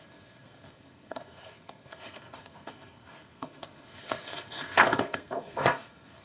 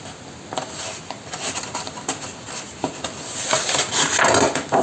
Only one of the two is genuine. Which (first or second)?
second